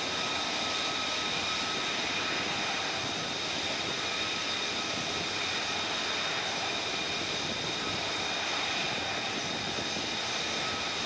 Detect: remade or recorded recorded